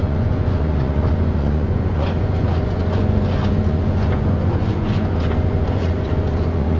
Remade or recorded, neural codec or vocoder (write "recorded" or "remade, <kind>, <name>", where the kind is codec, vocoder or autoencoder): remade, vocoder, Vocos